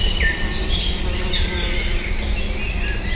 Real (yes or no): yes